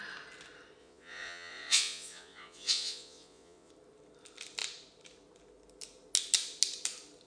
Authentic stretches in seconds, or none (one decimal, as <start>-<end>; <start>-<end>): 0.0-0.8; 3.7-7.3